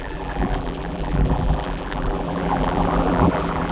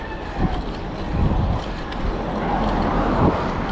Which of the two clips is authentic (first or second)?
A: second